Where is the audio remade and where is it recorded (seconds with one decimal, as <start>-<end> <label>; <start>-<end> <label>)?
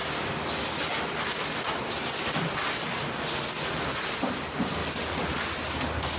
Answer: 0.0-6.2 recorded